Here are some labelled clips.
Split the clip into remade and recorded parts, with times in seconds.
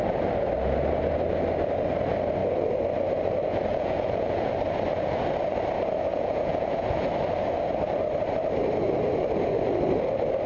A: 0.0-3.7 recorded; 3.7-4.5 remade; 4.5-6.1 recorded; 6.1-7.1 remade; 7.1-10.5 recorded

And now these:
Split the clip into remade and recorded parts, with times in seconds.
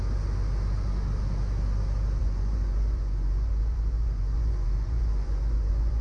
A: 0.0-2.2 recorded; 2.2-6.0 remade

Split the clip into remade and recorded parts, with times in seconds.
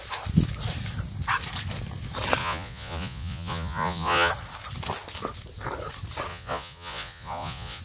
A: 0.0-2.4 recorded; 2.4-4.3 remade; 4.3-6.3 recorded; 6.3-7.8 remade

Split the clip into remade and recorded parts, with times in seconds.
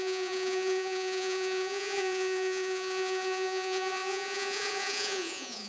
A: 0.0-5.7 remade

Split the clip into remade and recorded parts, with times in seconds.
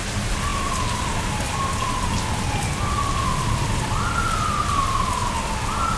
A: 0.0-6.0 recorded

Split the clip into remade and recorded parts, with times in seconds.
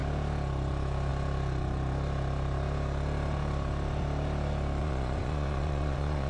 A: 0.0-4.8 recorded; 4.8-6.3 remade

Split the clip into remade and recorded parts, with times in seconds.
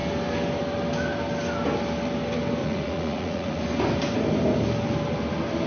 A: 0.0-2.6 recorded; 2.6-3.6 remade; 3.6-5.7 recorded